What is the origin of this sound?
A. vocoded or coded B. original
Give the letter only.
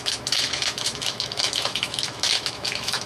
A